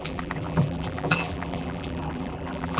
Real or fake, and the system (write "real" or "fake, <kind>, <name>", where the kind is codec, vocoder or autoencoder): fake, vocoder, BigVGAN v2